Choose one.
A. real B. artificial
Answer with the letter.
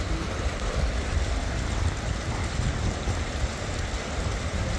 A